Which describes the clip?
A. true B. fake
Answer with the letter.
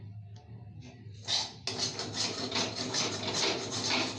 A